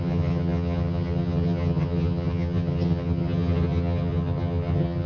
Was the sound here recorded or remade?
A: remade